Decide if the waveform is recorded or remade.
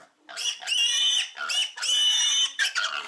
recorded